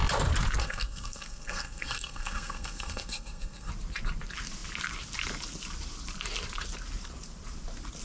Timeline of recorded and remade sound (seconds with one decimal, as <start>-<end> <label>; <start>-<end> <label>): 0.0-0.6 recorded; 0.6-3.7 remade; 3.7-8.0 recorded